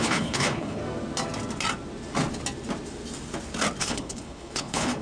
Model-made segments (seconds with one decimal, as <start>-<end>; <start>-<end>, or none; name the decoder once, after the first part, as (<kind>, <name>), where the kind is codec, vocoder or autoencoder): 0.0-0.8 (codec, HILCodec); 3.8-5.0